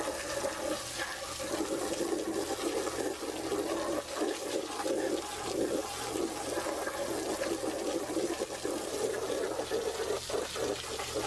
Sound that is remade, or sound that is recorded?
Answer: recorded